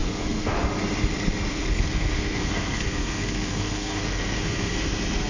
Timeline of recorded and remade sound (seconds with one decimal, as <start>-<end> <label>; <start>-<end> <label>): 0.0-0.6 remade; 0.6-1.5 recorded; 1.5-4.7 remade; 4.7-5.3 recorded